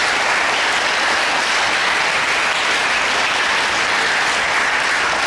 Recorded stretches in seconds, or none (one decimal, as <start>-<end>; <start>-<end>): 0.0-5.3